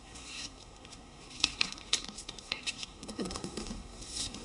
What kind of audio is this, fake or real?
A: fake